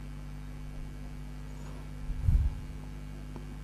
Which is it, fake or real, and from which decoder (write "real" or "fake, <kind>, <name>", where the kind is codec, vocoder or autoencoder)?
real